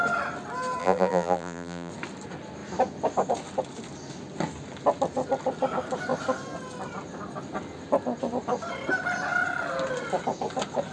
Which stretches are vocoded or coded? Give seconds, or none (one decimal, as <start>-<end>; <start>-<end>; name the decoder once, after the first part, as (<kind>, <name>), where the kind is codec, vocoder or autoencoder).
0.8-1.9 (vocoder, BigVGAN v2)